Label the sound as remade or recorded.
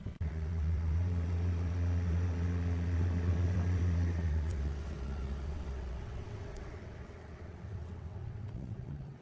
remade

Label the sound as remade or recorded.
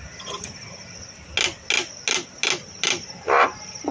recorded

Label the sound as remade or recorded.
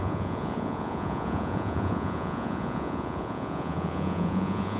remade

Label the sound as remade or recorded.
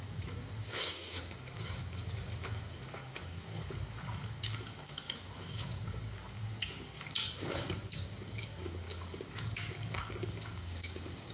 remade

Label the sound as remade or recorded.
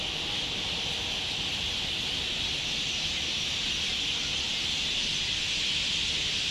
recorded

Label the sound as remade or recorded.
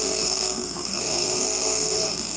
remade